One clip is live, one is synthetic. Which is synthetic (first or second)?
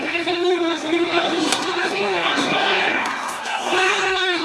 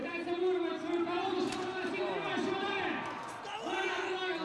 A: first